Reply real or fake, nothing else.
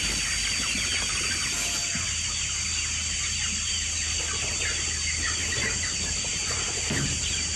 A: real